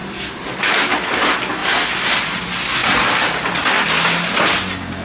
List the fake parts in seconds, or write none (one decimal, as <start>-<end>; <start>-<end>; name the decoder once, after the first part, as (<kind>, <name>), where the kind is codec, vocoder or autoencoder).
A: 0.0-0.9 (vocoder, BigVGAN v2); 1.6-2.4